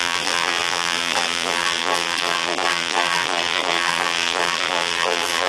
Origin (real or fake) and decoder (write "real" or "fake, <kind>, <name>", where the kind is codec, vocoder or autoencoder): fake, vocoder, BigVGAN v2